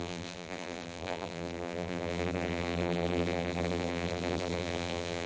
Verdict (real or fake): fake